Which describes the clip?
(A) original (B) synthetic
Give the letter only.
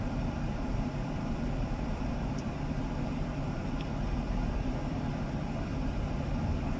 B